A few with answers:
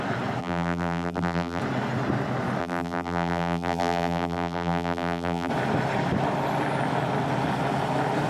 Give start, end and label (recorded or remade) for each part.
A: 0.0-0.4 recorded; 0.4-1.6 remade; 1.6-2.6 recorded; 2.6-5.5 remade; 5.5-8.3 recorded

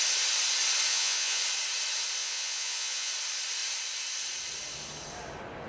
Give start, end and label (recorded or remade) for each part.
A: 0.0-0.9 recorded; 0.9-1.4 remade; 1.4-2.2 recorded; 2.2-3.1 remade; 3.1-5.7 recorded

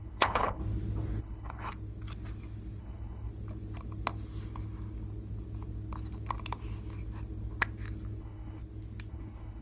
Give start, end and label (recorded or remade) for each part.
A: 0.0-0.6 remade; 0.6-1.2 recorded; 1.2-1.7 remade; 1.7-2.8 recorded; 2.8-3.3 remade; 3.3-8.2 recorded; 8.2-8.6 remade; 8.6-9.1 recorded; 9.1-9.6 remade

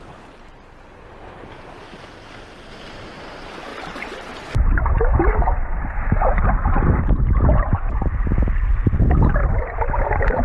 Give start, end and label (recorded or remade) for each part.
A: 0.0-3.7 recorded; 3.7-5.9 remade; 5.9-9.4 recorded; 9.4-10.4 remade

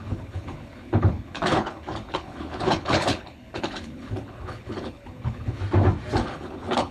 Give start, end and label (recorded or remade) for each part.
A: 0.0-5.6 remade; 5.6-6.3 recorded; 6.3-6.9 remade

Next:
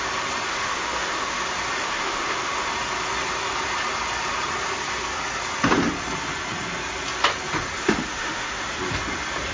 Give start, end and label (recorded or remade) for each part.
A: 0.0-0.5 recorded; 0.5-1.4 remade; 1.4-1.8 recorded; 1.8-2.7 remade; 2.7-7.8 recorded; 7.8-8.6 remade; 8.6-9.5 recorded